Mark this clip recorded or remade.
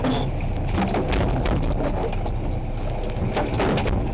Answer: recorded